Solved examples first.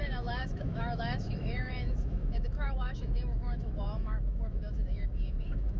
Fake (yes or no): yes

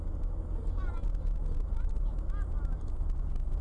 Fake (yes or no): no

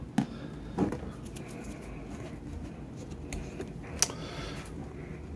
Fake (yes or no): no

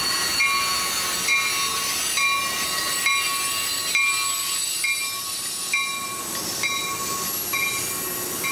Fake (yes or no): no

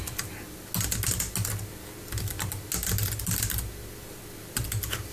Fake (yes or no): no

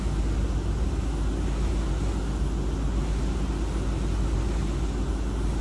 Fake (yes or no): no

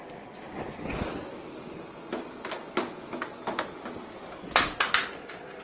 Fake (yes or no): no